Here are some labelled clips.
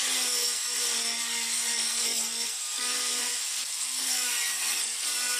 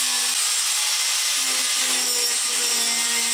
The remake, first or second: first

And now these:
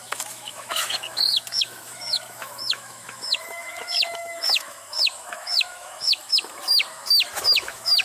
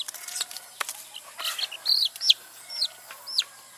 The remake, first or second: first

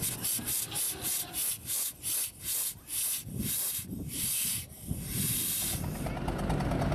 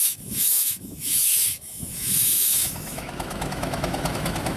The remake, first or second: second